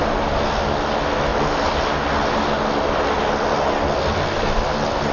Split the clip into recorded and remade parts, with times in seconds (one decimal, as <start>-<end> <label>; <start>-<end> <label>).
0.0-5.1 recorded